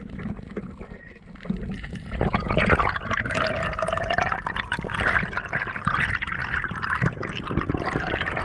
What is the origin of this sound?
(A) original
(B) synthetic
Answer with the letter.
A